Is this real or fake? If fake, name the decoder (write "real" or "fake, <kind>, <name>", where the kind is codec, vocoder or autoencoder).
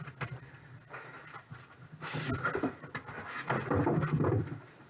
real